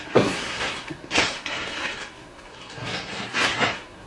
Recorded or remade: remade